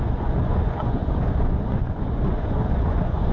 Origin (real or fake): fake